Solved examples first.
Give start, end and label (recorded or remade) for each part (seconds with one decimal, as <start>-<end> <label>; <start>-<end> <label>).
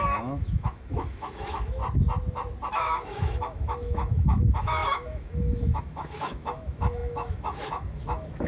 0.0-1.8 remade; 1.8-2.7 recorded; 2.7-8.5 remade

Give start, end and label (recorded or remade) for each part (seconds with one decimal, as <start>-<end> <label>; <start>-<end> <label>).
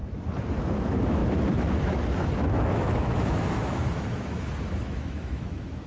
0.0-0.6 recorded; 0.6-5.9 remade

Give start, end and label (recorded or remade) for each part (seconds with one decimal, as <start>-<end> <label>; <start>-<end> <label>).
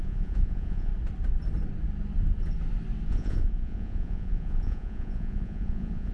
0.0-0.9 remade; 0.9-3.1 recorded; 3.1-6.1 remade